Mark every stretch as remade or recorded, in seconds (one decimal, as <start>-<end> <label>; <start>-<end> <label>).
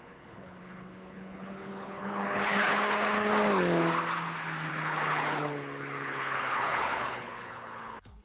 0.0-3.3 remade; 3.3-4.7 recorded; 4.7-8.2 remade